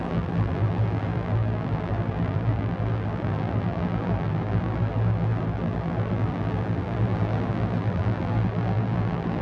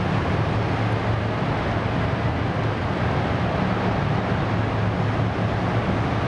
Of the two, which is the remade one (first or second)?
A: first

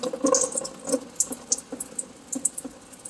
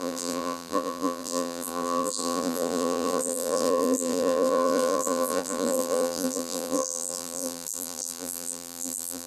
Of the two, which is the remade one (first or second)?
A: second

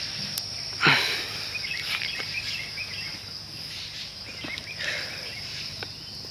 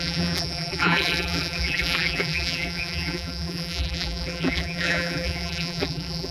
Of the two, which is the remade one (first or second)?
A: second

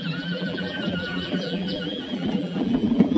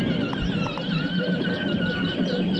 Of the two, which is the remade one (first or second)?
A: first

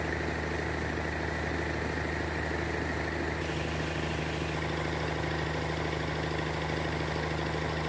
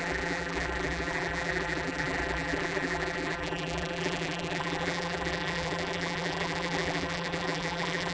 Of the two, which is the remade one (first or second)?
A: second